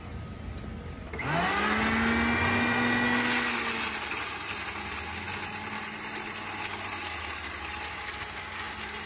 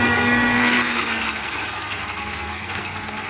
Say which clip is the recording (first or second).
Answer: first